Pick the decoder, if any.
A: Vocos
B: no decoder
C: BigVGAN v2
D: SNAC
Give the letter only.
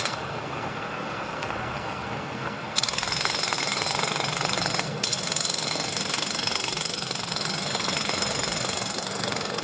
D